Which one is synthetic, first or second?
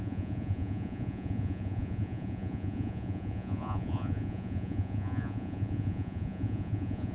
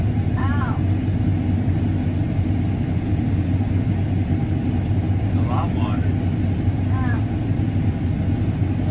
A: first